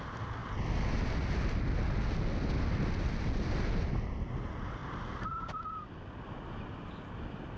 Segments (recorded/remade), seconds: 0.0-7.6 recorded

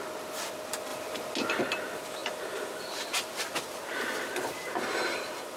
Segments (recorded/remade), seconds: 0.0-2.2 recorded; 2.2-5.6 remade